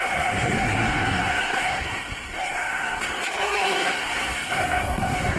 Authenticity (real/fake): fake